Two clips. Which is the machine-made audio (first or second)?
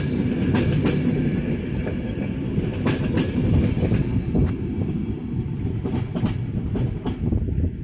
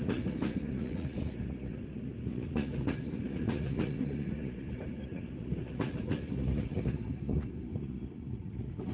second